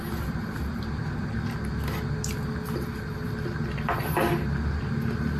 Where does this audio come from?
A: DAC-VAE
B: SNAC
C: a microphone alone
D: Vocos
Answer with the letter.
C